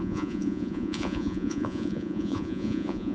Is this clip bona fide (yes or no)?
no